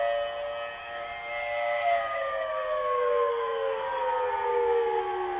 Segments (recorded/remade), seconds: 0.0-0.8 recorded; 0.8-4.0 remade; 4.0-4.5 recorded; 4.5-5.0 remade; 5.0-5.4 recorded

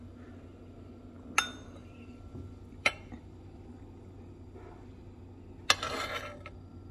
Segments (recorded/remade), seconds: 0.0-1.8 recorded; 1.8-5.2 remade; 5.2-6.9 recorded

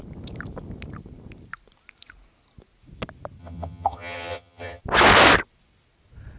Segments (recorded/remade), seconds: 0.0-3.4 recorded; 3.4-4.8 remade; 4.8-6.4 recorded

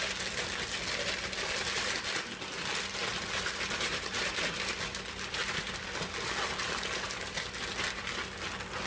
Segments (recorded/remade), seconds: 0.0-8.9 recorded